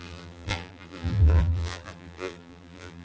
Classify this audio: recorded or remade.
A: remade